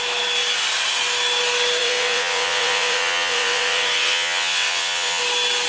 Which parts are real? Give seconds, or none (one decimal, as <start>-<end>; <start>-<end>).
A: 0.0-1.8; 5.2-5.7